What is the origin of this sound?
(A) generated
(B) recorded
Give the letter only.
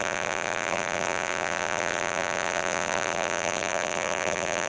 A